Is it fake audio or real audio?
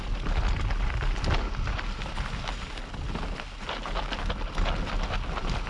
real